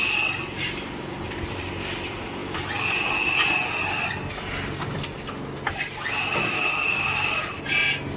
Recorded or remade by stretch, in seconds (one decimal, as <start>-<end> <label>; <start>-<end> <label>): 0.0-8.2 recorded